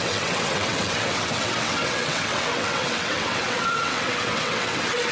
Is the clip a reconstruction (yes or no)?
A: yes